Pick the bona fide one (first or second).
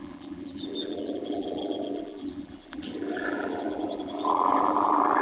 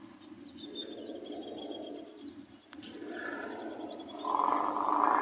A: second